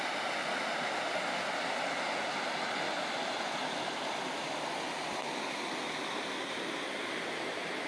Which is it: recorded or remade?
recorded